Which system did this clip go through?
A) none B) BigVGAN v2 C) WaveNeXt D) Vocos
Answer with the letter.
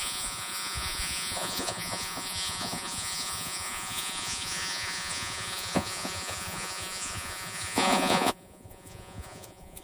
D